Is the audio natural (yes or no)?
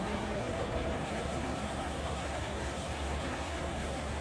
no